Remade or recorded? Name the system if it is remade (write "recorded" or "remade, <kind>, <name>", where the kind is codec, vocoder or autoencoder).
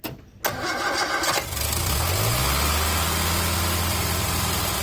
recorded